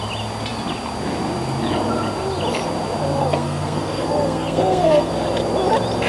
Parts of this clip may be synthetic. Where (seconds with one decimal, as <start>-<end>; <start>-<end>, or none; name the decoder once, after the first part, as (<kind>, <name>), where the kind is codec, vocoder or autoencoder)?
3.2-5.1 (codec, SNAC)